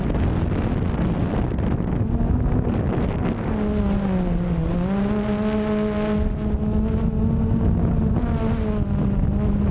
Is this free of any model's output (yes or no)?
yes